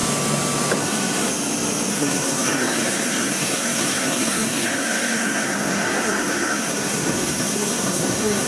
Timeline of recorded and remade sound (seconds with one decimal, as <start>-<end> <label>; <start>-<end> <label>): 0.0-0.8 recorded; 0.8-1.3 remade; 1.3-1.9 recorded; 1.9-8.5 remade